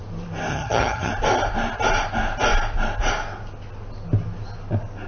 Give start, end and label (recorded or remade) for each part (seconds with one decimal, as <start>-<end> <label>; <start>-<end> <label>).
0.0-0.5 recorded; 0.5-1.1 remade; 1.1-5.1 recorded